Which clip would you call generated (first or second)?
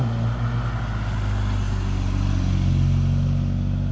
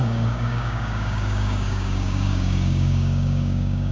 second